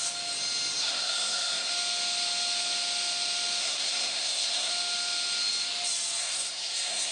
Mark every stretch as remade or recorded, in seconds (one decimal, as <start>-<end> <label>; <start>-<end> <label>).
0.0-0.8 recorded; 0.8-1.7 remade; 1.7-3.6 recorded; 3.6-4.7 remade; 4.7-6.2 recorded; 6.2-7.1 remade